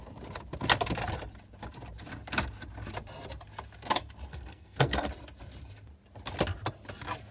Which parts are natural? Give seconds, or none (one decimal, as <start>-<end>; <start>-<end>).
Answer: 0.0-4.3; 5.1-7.3